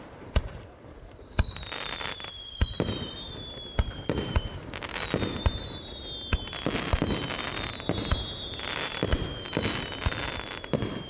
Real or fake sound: real